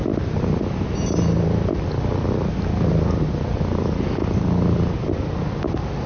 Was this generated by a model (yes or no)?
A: no